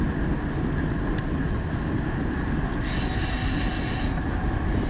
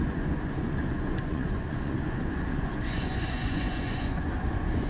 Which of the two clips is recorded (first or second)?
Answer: first